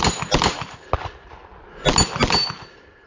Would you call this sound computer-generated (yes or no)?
no